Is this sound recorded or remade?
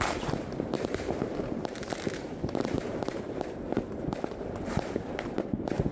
remade